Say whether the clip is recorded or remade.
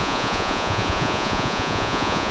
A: remade